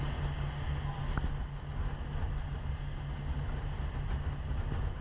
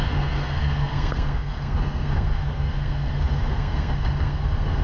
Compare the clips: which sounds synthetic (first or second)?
second